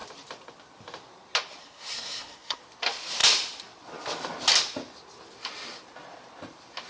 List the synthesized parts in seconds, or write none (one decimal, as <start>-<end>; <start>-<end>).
1.6-2.6